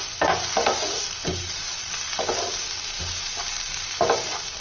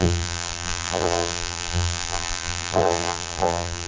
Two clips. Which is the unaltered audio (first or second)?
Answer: first